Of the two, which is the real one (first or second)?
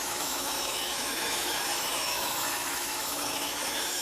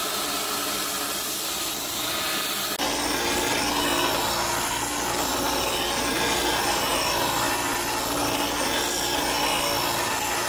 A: second